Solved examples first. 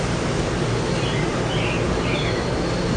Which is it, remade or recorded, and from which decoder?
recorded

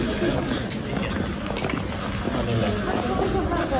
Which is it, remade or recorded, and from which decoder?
recorded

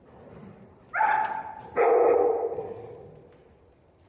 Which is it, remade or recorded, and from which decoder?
recorded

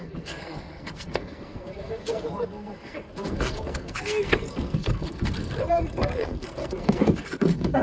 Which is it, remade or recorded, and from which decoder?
remade, codec, SNAC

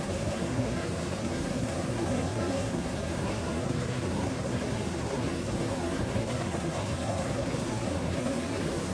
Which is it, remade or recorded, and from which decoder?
remade, codec, SNAC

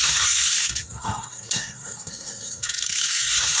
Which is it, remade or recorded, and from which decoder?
remade, codec, SNAC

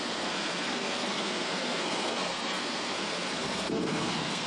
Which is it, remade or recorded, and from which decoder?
remade, codec, SNAC